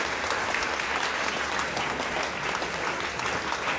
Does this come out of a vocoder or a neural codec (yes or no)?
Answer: no